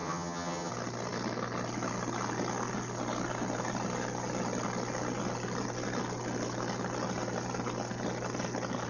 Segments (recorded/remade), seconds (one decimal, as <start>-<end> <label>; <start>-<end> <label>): 0.0-0.7 remade; 0.7-8.9 recorded